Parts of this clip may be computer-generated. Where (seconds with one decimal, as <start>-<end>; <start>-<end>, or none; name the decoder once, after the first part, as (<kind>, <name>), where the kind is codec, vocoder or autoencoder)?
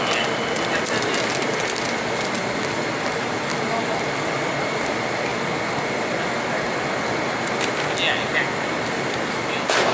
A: none